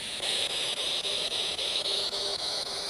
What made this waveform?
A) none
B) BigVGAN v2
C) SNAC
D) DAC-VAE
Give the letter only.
D